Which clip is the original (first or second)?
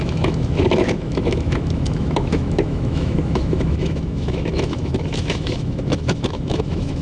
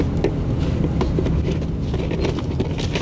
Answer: second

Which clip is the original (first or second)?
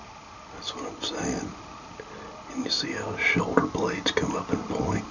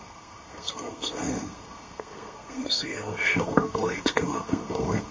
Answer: first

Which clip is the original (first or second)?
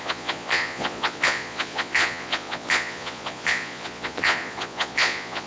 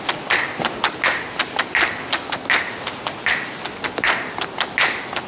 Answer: second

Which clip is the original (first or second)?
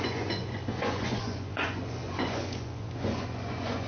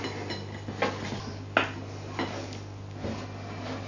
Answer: second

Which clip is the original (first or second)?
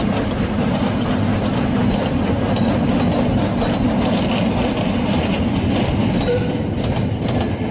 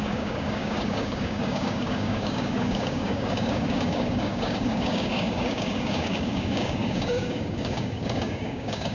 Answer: first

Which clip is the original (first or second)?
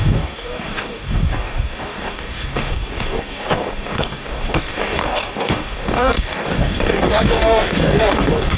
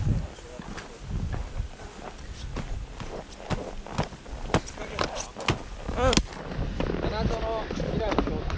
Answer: second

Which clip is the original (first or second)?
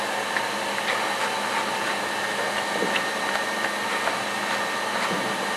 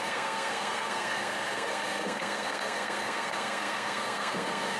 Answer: first